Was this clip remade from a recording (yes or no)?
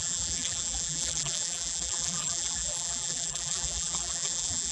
yes